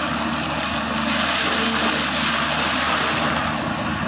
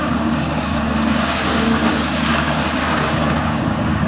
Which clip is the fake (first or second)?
second